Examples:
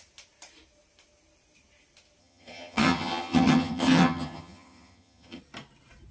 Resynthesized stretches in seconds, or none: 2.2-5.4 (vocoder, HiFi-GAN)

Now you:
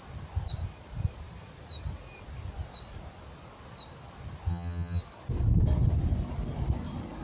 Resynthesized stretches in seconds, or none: 4.5-5.0 (vocoder, HiFi-GAN)

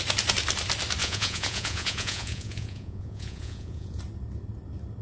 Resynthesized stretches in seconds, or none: 1.0-4.0 (vocoder, Vocos)

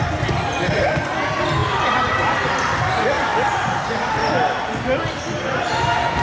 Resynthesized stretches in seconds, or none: none

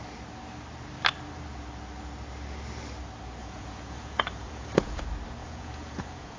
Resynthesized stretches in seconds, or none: 3.4-5.0 (vocoder, Vocos); 5.4-6.4

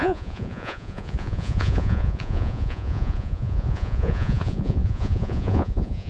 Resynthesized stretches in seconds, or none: 0.0-6.1 (vocoder, Vocos)

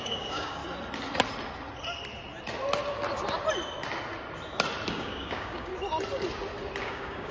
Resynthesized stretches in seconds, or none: 0.0-0.6 (codec, DAC); 4.9-5.7; 6.8-7.3

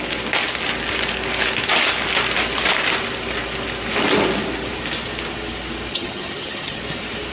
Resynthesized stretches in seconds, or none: 5.9-6.8 (vocoder, HiFi-GAN)